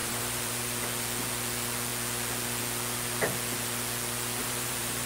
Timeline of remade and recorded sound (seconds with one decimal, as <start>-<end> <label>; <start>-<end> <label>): 0.0-0.6 remade; 0.6-4.4 recorded; 4.4-5.1 remade